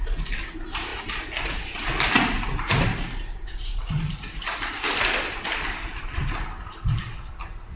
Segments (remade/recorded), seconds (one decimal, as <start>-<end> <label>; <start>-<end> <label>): 0.0-7.8 recorded